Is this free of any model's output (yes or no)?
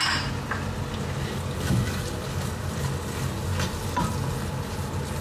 yes